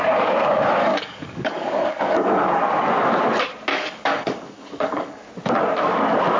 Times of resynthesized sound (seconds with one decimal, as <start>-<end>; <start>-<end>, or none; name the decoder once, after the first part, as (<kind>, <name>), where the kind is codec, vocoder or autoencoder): 0.8-2.6 (codec, DAC); 3.7-5.3